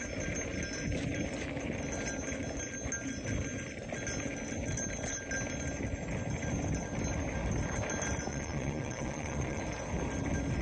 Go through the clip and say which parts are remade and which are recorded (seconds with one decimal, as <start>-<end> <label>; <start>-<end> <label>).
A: 0.0-8.3 recorded; 8.3-9.6 remade; 9.6-10.6 recorded